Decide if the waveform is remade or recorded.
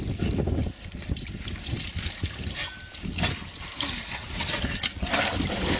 recorded